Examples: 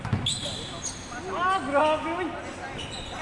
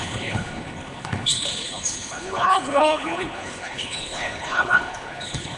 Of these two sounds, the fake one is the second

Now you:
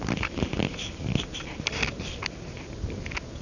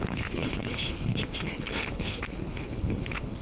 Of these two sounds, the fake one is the second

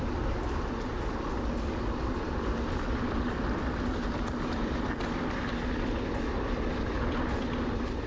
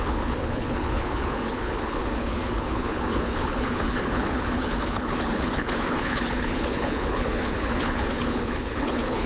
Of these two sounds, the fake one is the second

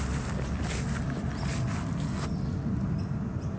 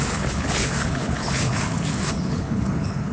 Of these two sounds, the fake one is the second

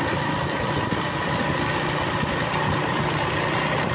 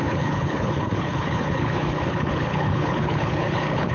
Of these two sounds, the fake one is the second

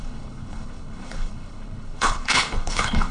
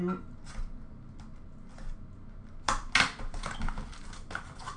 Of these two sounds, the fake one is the first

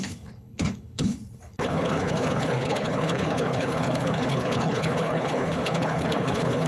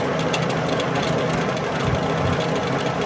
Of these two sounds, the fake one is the first